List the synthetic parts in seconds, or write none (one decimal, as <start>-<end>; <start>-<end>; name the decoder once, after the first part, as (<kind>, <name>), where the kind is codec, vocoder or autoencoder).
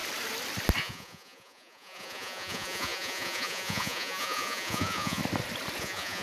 0.8-5.2 (vocoder, Vocos); 5.8-6.2